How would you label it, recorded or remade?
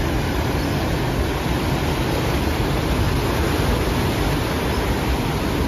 recorded